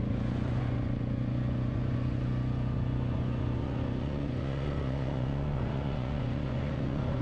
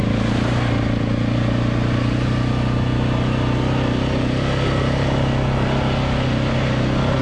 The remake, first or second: first